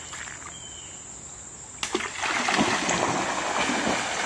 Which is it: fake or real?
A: real